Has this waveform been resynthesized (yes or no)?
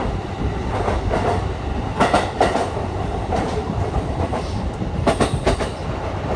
yes